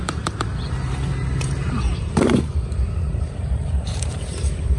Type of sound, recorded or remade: remade